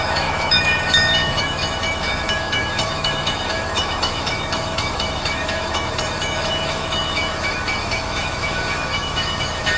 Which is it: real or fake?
fake